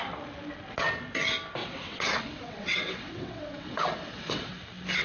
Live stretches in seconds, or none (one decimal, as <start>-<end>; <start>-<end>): 0.0-1.6; 4.6-5.0